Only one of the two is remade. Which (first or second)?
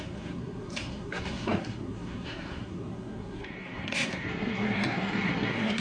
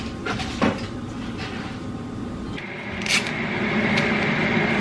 first